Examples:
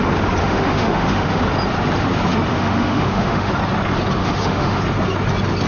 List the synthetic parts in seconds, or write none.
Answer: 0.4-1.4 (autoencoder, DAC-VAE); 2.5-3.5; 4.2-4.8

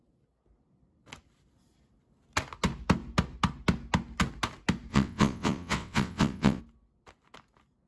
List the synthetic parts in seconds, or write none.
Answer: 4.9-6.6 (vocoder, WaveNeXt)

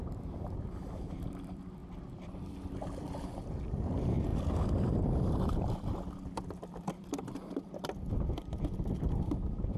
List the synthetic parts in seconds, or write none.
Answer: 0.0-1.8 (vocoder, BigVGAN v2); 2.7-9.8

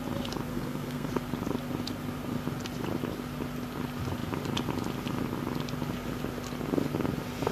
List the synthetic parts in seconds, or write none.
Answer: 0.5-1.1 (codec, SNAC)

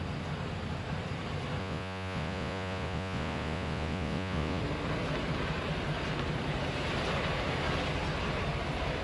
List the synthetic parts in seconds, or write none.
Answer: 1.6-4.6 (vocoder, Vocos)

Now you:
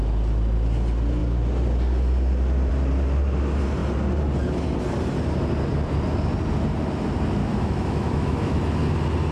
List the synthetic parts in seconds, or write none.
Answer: 7.4-8.6 (autoencoder, DAC-VAE)

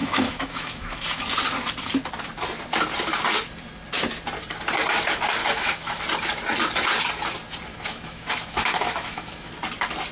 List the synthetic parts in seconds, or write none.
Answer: 0.0-1.2 (autoencoder, DAC-VAE); 5.4-6.0; 7.7-9.5